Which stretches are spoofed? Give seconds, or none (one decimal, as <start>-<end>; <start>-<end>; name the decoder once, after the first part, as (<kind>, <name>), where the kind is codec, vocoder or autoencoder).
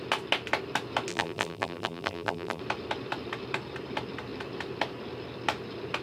1.1-2.6 (vocoder, BigVGAN v2)